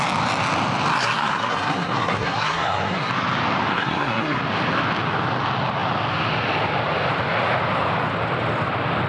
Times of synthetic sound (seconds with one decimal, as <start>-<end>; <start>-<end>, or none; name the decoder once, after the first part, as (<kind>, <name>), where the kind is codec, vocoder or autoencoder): 0.9-3.1 (codec, SNAC); 3.7-4.4